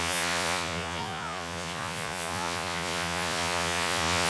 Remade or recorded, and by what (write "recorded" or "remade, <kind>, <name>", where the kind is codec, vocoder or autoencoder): remade, vocoder, Vocos